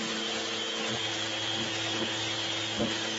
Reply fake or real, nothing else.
real